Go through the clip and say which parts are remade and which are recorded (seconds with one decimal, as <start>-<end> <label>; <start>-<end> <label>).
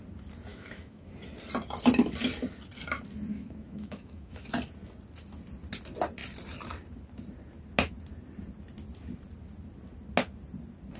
0.0-0.5 recorded; 0.5-1.1 remade; 1.1-3.3 recorded; 3.3-4.5 remade; 4.5-11.0 recorded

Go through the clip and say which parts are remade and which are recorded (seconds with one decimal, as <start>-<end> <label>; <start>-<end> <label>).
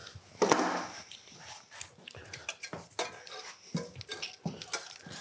0.0-5.2 recorded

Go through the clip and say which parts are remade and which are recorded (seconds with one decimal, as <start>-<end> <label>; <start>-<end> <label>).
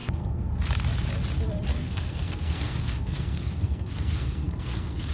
0.0-0.5 remade; 0.5-1.7 recorded; 1.7-5.1 remade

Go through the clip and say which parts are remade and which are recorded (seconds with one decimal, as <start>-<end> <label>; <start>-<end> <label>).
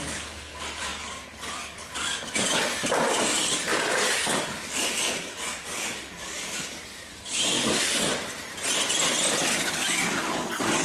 0.0-8.1 remade; 8.1-9.5 recorded; 9.5-10.8 remade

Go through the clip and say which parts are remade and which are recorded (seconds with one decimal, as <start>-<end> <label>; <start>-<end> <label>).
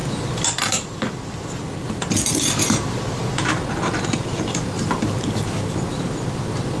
0.0-6.8 recorded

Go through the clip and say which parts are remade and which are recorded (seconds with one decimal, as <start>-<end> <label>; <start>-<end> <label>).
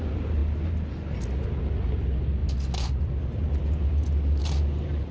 0.0-5.1 recorded